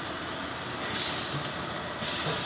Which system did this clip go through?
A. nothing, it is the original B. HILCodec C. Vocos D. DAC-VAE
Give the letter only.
A